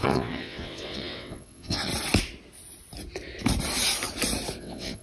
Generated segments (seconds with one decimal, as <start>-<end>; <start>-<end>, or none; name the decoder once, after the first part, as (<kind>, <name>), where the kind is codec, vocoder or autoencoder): 0.0-1.9 (vocoder, WaveNeXt); 4.6-5.0